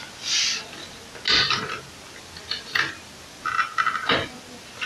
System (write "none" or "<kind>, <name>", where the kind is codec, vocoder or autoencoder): none